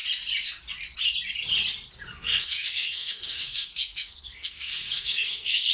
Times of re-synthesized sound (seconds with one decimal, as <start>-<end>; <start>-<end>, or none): 2.1-5.7